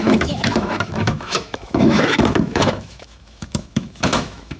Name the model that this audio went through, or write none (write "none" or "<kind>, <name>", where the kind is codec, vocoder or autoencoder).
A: autoencoder, DAC-VAE